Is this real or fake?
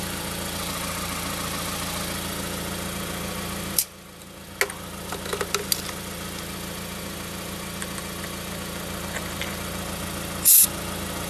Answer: real